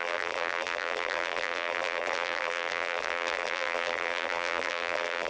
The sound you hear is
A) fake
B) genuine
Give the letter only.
A